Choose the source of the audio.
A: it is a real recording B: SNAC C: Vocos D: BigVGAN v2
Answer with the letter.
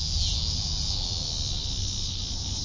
A